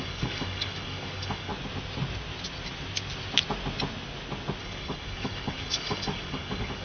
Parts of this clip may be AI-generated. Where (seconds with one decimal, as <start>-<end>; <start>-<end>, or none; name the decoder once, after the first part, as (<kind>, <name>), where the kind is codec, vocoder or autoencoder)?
0.0-1.5 (codec, DAC); 4.6-6.8